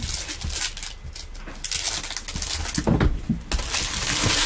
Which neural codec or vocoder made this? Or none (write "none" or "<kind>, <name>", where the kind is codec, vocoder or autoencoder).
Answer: none